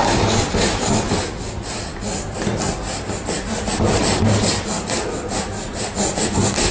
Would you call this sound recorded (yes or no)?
yes